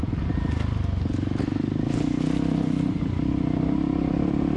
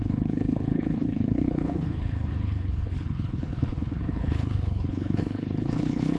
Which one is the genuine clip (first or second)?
first